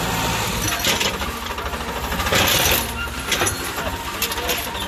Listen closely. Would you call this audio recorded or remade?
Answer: recorded